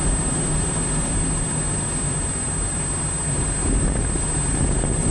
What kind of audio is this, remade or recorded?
recorded